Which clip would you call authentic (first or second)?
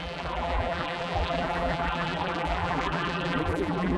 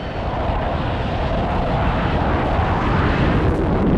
second